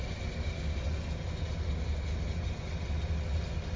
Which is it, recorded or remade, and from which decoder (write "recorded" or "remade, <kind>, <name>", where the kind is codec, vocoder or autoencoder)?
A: recorded